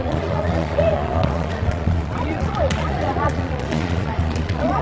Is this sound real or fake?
fake